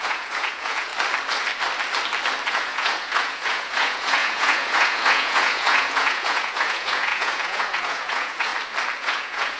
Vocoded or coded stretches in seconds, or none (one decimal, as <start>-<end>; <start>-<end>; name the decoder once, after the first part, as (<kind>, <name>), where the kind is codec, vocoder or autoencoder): 0.0-0.9 (vocoder, Vocos); 2.5-8.5; 9.0-9.6

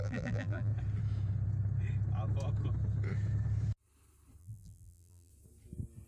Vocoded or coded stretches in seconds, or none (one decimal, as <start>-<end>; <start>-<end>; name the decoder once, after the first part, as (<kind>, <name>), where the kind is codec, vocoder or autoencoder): 0.0-0.7 (vocoder, BigVGAN v2); 4.4-5.3

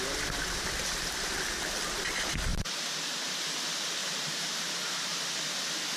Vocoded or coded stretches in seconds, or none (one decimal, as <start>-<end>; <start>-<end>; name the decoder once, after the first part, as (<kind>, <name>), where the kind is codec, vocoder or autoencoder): 2.5-3.4 (vocoder, BigVGAN v2); 4.0-5.2

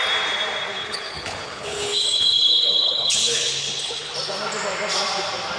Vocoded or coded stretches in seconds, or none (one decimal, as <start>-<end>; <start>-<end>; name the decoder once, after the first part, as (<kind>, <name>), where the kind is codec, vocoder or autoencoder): 0.7-4.1 (codec, HILCodec)